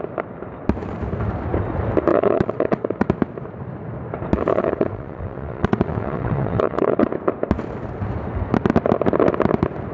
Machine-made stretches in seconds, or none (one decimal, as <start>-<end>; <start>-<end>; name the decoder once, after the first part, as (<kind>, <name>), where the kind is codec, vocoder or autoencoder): 2.1-3.1 (vocoder, WaveNeXt); 4.5-7.1